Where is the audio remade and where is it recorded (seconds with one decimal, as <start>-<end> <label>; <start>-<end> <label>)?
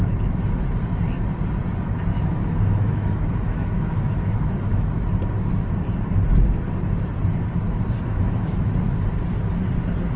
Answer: 0.0-2.1 recorded; 2.1-5.0 remade; 5.0-8.1 recorded; 8.1-8.7 remade; 8.7-10.2 recorded